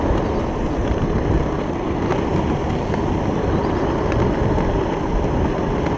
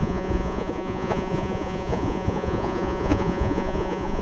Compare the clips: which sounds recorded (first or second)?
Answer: first